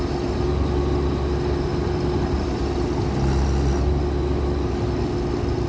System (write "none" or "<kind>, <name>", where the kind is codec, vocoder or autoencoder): none